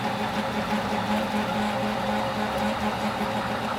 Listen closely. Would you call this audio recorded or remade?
recorded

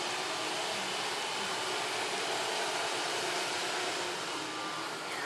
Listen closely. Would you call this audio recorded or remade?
recorded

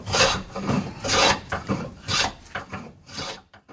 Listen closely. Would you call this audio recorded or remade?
remade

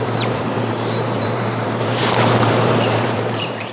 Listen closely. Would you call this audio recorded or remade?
remade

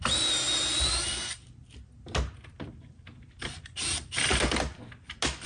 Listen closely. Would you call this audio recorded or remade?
recorded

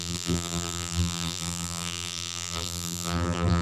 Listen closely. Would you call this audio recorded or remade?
remade